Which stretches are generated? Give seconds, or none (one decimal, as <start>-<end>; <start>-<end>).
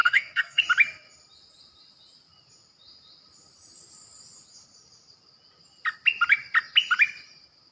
0.0-0.6